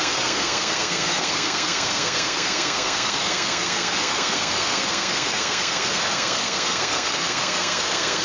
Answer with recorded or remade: remade